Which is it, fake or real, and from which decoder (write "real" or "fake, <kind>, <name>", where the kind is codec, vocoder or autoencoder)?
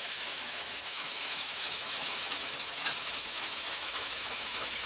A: fake, autoencoder, DAC-VAE